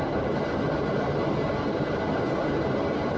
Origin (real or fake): real